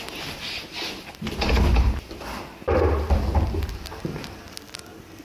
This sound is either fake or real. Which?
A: real